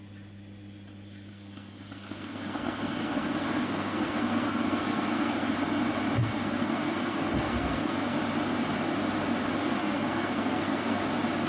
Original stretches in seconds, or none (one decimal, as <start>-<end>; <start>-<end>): 0.0-1.3; 5.5-6.2; 8.2-9.6; 11.0-11.5